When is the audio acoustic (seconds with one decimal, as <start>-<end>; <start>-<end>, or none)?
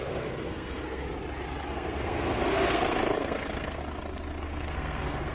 1.0-1.7; 3.8-4.4